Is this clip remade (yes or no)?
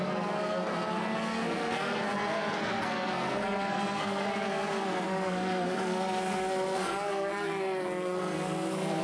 yes